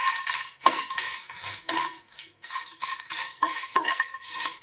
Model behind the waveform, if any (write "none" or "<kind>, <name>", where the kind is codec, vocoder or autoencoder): codec, SNAC